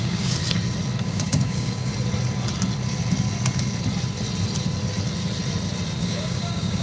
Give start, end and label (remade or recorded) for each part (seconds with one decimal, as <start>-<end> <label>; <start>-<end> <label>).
0.0-0.4 remade; 0.4-1.0 recorded; 1.0-1.9 remade; 1.9-6.0 recorded; 6.0-6.8 remade